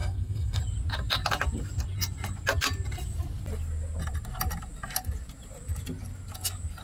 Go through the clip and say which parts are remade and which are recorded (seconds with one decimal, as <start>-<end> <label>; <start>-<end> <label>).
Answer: 0.0-0.6 remade; 0.6-6.8 recorded